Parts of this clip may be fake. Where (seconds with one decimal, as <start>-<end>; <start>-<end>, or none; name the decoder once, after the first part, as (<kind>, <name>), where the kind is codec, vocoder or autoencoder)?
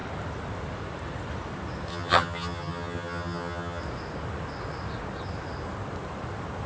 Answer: 1.9-3.8 (vocoder, HiFi-GAN)